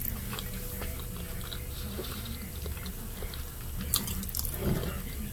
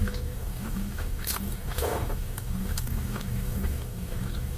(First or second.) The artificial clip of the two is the second